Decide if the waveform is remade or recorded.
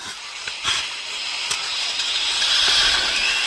recorded